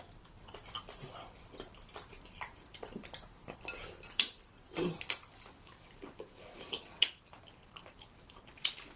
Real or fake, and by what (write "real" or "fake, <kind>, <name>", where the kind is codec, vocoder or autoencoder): fake, vocoder, BigVGAN v2